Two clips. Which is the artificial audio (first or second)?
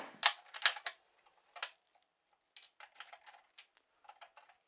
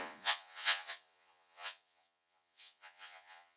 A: second